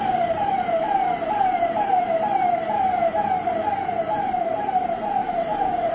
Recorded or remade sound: remade